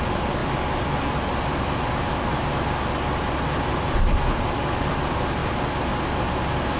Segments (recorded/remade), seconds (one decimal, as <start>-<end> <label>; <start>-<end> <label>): 0.0-6.8 recorded